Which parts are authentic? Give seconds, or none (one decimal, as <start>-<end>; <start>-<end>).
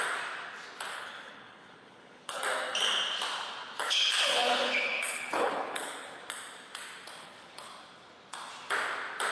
0.0-0.9; 2.4-3.8; 6.2-7.2; 7.7-9.3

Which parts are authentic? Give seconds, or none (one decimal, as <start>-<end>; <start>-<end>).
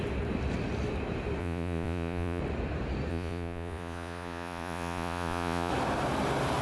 0.0-1.4; 2.4-3.1; 5.7-6.6